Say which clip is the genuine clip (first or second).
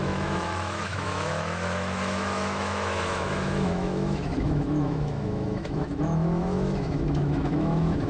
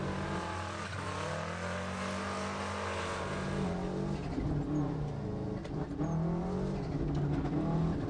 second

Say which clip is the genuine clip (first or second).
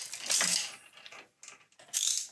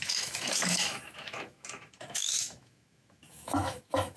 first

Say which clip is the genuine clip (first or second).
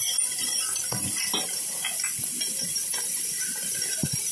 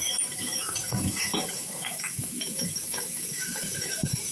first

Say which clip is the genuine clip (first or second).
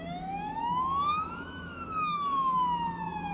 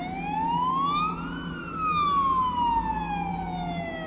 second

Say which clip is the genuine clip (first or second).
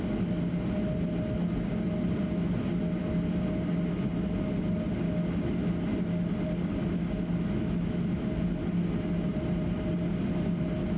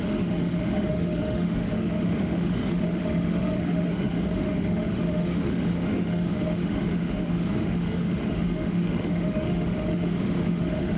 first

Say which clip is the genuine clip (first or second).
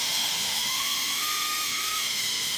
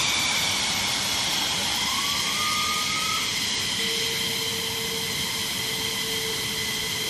second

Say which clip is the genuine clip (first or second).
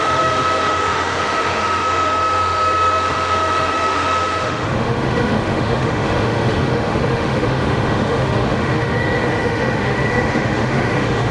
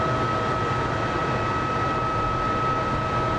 second